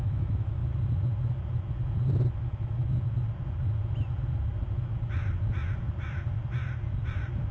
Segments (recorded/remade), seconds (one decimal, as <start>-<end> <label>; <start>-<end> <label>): 0.0-0.6 remade; 0.6-2.3 recorded; 2.3-2.8 remade; 2.8-7.5 recorded